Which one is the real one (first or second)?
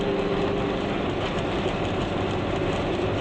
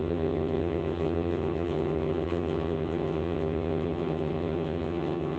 first